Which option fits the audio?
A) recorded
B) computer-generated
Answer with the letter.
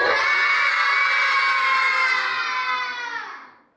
A